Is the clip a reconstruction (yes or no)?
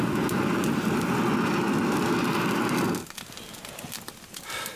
no